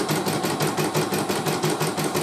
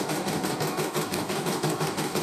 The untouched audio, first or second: first